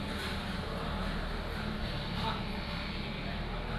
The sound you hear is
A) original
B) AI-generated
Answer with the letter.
A